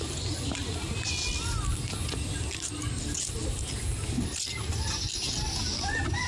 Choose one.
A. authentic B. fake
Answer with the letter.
A